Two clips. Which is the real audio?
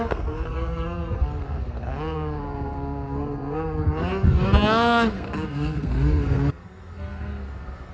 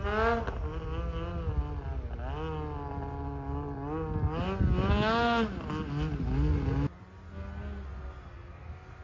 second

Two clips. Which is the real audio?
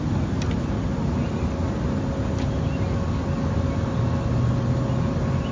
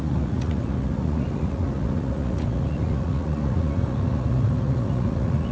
first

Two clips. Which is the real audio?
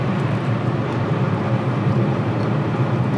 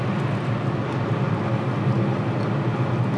second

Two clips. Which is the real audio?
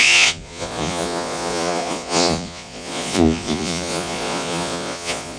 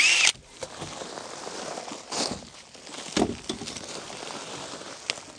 second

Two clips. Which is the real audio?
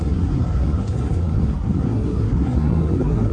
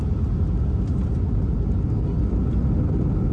second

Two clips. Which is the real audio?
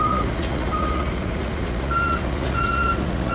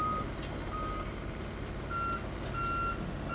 second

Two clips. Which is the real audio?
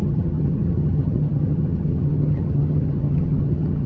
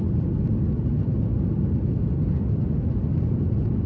second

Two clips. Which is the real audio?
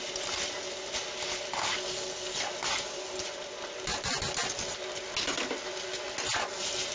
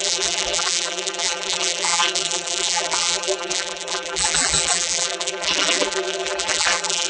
first